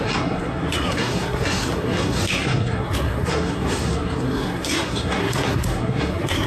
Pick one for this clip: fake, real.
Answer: fake